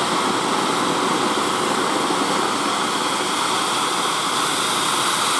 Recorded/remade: recorded